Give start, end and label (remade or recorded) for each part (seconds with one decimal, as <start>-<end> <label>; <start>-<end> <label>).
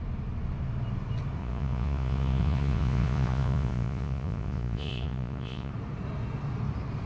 0.0-1.4 recorded; 1.4-5.7 remade; 5.7-7.1 recorded